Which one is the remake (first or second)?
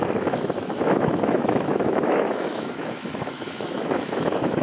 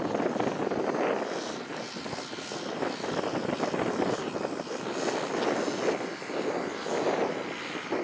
first